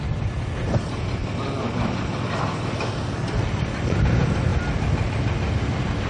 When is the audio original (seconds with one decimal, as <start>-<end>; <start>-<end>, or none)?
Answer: 0.0-6.1